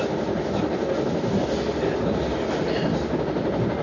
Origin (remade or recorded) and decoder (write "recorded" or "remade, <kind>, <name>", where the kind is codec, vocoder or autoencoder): recorded